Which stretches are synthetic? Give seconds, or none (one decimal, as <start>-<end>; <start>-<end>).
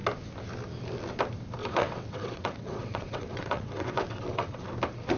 1.6-4.7